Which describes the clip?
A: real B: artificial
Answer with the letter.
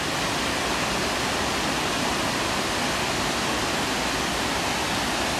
A